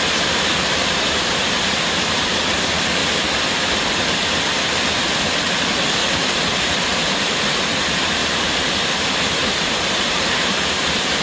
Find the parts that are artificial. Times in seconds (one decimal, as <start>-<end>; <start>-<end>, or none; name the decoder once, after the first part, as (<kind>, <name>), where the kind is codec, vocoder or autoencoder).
0.0-3.0 (vocoder, BigVGAN v2); 5.2-6.0; 6.8-11.2